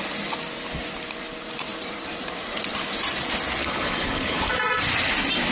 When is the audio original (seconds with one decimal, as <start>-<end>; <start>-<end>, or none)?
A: 0.0-3.6; 4.5-5.5